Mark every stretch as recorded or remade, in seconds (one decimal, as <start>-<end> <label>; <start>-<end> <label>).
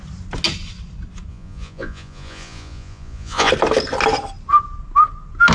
0.0-1.3 recorded; 1.3-3.5 remade; 3.5-5.5 recorded